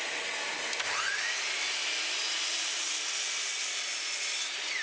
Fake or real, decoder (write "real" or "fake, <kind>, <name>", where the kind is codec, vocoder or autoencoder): real